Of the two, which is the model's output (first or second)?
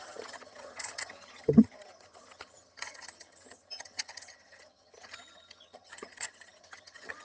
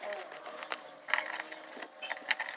first